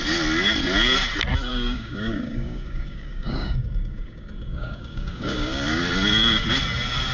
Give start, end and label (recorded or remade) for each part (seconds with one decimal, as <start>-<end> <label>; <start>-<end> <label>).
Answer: 0.0-1.5 recorded; 1.5-5.8 remade; 5.8-7.1 recorded